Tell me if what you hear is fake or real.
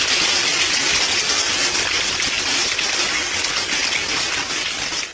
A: real